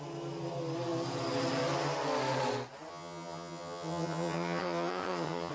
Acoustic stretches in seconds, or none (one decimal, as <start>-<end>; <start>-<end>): 0.0-2.9